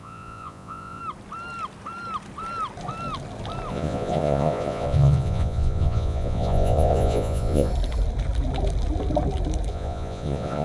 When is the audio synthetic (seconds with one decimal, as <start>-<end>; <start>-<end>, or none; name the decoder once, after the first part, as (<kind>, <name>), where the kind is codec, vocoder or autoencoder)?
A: 0.0-1.0 (vocoder, Vocos); 3.7-7.7; 9.7-10.6